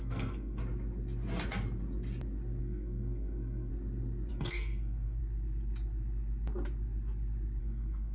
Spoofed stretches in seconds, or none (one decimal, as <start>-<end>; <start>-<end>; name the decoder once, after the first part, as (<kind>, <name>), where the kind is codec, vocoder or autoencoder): 0.0-0.6 (codec, SNAC); 2.6-3.7; 4.3-5.2; 7.6-8.1

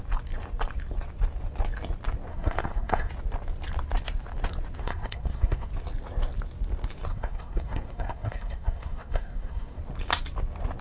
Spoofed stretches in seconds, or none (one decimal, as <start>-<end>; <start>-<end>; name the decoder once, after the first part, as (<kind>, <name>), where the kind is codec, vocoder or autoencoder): 2.3-3.1 (codec, SNAC); 4.8-5.7; 7.1-9.8

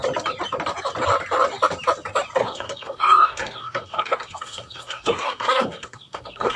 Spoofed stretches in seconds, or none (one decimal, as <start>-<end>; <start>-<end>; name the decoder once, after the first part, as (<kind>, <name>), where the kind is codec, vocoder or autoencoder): 2.4-6.6 (codec, SNAC)

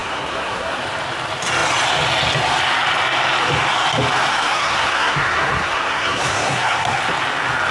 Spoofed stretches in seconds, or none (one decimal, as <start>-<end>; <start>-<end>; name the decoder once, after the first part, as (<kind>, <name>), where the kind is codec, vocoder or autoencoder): 0.0-0.8 (codec, SNAC); 4.3-7.0